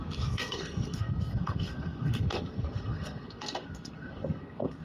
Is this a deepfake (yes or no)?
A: yes